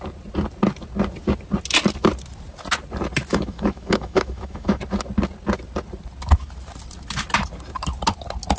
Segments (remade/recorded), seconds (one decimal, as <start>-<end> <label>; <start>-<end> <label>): 0.0-3.3 recorded; 3.3-4.8 remade; 4.8-8.6 recorded